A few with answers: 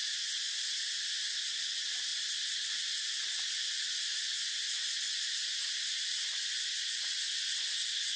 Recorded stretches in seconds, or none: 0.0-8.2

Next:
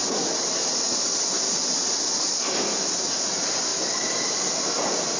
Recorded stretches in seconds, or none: 0.0-5.2

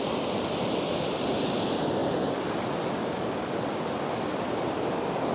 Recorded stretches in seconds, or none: 0.0-2.0

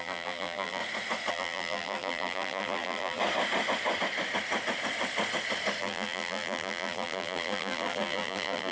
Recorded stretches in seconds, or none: 0.8-1.3; 3.2-5.8

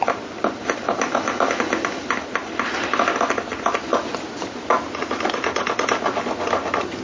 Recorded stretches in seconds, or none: 0.0-7.0

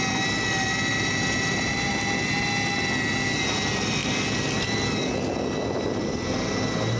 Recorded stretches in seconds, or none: 0.0-0.9; 1.9-7.0

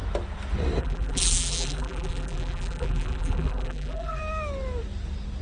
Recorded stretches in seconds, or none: 0.0-0.8; 4.2-5.4